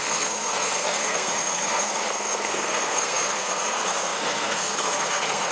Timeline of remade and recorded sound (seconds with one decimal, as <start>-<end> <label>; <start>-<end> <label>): 0.0-5.5 remade